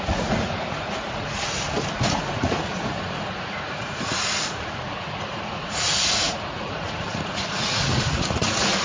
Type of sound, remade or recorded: remade